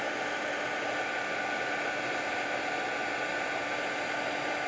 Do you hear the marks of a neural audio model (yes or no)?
no